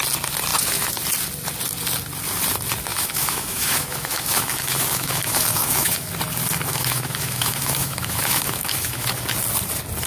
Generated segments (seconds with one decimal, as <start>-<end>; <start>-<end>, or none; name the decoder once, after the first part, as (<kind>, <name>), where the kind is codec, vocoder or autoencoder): 2.9-6.1 (autoencoder, DAC-VAE); 6.7-9.1